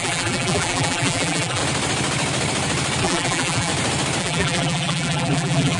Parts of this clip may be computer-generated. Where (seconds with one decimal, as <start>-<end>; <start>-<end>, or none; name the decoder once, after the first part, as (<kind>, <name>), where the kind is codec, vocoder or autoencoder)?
0.0-1.6 (vocoder, BigVGAN v2); 3.0-3.7; 4.2-5.8